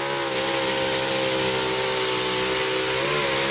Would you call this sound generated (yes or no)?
no